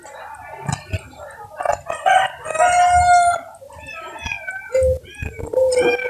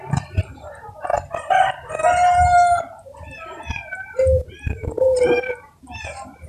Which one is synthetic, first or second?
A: second